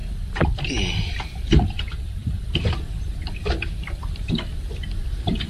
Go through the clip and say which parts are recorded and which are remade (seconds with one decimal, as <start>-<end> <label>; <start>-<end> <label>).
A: 0.0-1.1 recorded; 1.1-5.5 remade

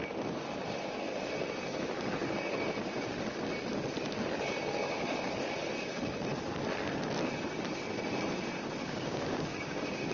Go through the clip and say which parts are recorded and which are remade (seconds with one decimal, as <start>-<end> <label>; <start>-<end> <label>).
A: 0.0-4.8 recorded; 4.8-5.3 remade; 5.3-8.8 recorded; 8.8-10.1 remade

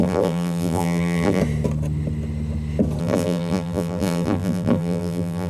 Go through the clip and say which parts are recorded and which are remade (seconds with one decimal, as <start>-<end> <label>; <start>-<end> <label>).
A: 0.0-1.4 remade; 1.4-3.0 recorded; 3.0-5.5 remade

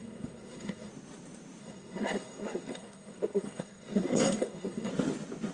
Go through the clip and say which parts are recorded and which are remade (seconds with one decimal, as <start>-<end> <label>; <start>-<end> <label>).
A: 0.0-0.9 remade; 0.9-1.6 recorded; 1.6-4.9 remade; 4.9-5.5 recorded

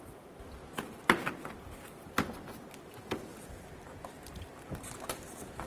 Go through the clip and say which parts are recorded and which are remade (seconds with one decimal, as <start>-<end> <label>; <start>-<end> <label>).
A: 0.0-0.6 remade; 0.6-2.0 recorded; 2.0-3.3 remade; 3.3-5.1 recorded; 5.1-5.7 remade